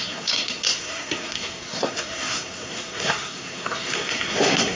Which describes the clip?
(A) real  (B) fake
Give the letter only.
B